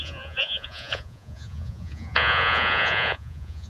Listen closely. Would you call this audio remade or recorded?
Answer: remade